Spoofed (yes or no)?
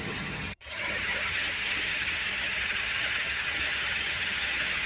yes